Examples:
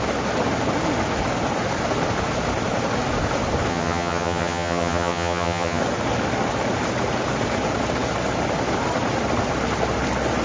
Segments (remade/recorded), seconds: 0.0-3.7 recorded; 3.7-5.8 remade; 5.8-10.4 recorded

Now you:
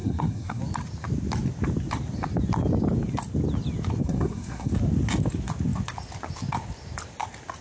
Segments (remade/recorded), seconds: 0.0-0.6 remade; 0.6-4.0 recorded; 4.0-4.7 remade; 4.7-7.6 recorded

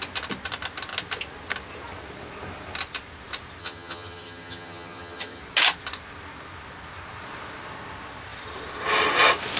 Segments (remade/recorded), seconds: 0.0-3.6 recorded; 3.6-5.4 remade; 5.4-9.6 recorded

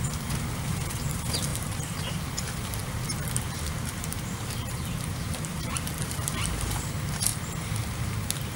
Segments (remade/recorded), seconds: 0.0-1.5 recorded; 1.5-2.3 remade; 2.3-2.8 recorded; 2.8-6.3 remade; 6.3-8.6 recorded

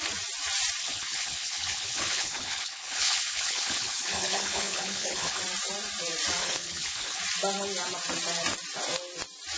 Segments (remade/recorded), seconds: 0.0-0.8 recorded; 0.8-5.4 remade; 5.4-6.4 recorded; 6.4-7.2 remade; 7.2-9.6 recorded

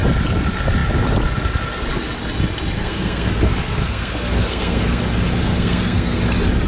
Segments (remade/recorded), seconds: 0.0-2.8 recorded; 2.8-3.3 remade; 3.3-3.8 recorded; 3.8-5.0 remade; 5.0-5.4 recorded; 5.4-6.2 remade; 6.2-6.7 recorded